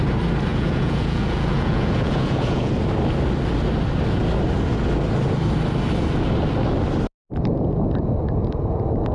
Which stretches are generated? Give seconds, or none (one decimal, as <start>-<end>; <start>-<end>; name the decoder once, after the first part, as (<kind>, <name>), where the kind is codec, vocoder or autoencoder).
0.5-2.7 (vocoder, Vocos)